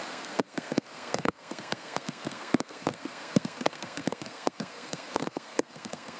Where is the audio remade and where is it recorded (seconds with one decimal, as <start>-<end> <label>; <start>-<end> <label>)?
0.0-6.2 remade